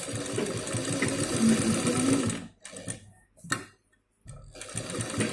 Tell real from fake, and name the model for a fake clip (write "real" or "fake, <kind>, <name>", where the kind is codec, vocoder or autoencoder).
real